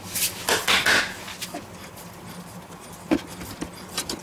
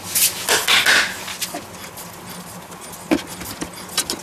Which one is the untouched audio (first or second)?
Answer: second